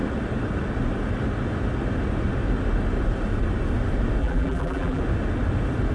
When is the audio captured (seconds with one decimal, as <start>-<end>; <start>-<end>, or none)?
0.0-4.2; 5.0-5.9